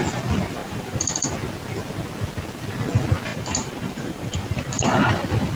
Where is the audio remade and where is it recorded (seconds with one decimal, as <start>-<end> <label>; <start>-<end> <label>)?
0.0-0.6 recorded; 0.6-1.3 remade; 1.3-3.3 recorded; 3.3-4.7 remade; 4.7-5.6 recorded

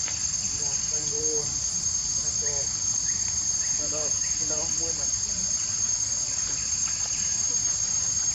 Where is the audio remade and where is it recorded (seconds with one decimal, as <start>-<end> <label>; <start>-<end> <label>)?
0.0-8.3 remade

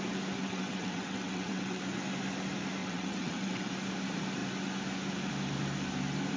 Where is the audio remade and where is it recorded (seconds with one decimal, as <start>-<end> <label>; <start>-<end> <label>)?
0.0-0.4 recorded; 0.4-1.8 remade; 1.8-2.8 recorded; 2.8-3.7 remade; 3.7-6.4 recorded

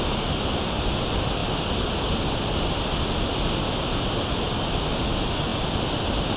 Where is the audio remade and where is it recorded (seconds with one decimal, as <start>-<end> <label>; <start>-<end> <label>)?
0.0-6.4 recorded

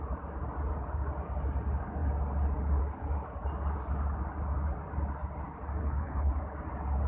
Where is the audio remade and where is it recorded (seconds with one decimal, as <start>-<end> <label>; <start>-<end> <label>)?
0.0-5.8 recorded; 5.8-6.3 remade; 6.3-7.1 recorded

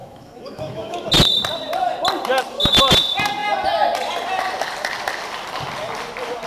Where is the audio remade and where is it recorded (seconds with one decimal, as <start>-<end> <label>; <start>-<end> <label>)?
0.0-1.1 remade; 1.1-6.5 recorded

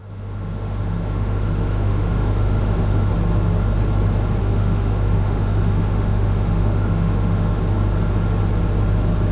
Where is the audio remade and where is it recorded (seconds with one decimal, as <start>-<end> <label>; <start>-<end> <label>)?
0.0-3.1 remade; 3.1-4.4 recorded; 4.4-7.6 remade; 7.6-9.3 recorded